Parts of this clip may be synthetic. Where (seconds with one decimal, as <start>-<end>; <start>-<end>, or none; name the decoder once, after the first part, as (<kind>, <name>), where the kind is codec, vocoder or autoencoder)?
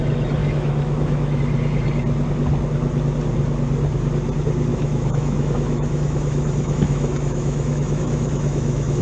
0.4-1.4 (autoencoder, DAC-VAE); 4.7-9.0